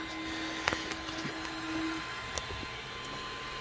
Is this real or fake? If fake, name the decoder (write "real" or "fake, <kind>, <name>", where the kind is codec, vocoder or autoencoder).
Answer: real